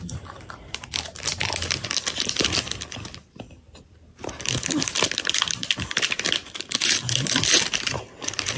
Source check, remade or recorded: remade